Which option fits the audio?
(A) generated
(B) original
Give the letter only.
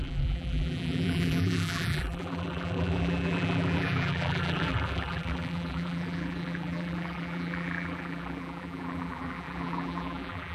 A